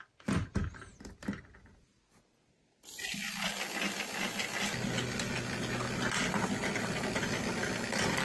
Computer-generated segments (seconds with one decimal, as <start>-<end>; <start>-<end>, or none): none